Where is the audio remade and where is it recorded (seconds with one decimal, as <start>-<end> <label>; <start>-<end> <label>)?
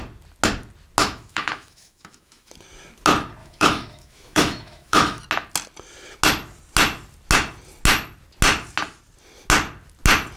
0.0-1.0 recorded; 1.0-2.5 remade; 2.5-3.4 recorded; 3.4-5.2 remade; 5.2-10.4 recorded